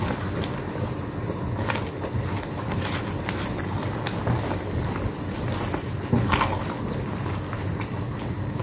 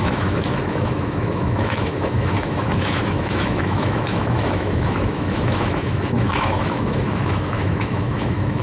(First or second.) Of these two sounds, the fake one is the second